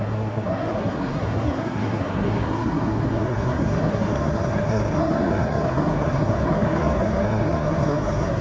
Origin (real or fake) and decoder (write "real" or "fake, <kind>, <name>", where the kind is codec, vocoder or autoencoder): fake, codec, SNAC